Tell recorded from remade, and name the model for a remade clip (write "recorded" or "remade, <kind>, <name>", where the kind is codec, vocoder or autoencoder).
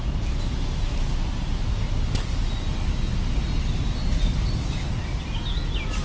recorded